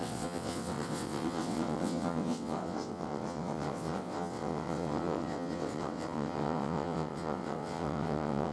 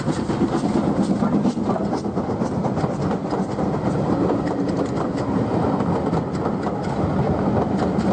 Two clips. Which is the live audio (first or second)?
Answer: second